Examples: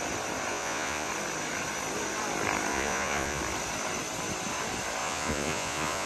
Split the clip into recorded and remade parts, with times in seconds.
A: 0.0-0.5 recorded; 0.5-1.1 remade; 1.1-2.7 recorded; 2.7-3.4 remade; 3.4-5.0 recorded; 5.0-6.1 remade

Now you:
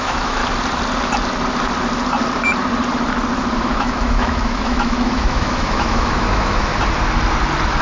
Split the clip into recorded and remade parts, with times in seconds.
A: 0.0-0.4 remade; 0.4-3.6 recorded; 3.6-6.7 remade; 6.7-7.8 recorded

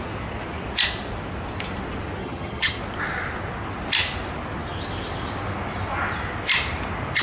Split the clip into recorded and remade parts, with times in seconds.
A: 0.0-2.2 recorded; 2.2-2.8 remade; 2.8-7.2 recorded

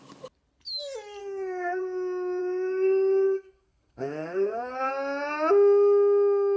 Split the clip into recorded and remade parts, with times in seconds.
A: 0.0-1.2 recorded; 1.2-1.8 remade; 1.8-2.4 recorded; 2.4-4.9 remade; 4.9-6.6 recorded

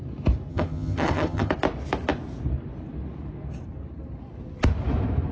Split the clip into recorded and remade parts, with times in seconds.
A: 0.0-0.5 recorded; 0.5-1.5 remade; 1.5-5.3 recorded

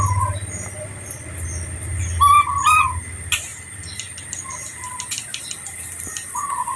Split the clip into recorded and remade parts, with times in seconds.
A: 0.0-6.8 recorded